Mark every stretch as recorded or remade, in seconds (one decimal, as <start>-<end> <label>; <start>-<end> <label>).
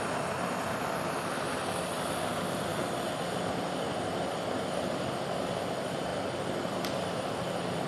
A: 0.0-7.9 recorded